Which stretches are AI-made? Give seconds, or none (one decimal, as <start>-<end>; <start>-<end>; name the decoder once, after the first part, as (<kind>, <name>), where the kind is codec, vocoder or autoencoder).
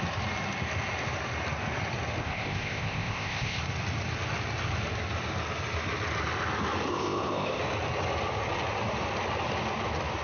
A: 2.2-3.6 (codec, ZipCodec); 6.9-7.6